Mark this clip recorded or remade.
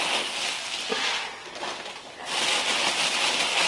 recorded